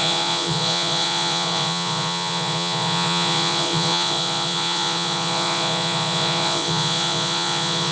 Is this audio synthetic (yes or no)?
yes